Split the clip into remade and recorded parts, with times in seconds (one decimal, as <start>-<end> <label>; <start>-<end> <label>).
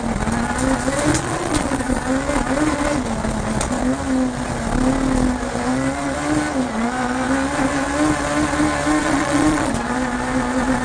0.0-1.1 recorded; 1.1-2.0 remade; 2.0-9.0 recorded; 9.0-9.7 remade; 9.7-10.8 recorded